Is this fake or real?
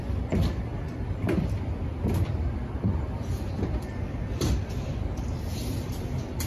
fake